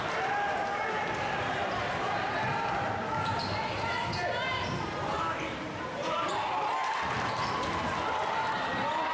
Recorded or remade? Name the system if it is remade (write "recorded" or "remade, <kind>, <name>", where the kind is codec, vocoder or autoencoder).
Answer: recorded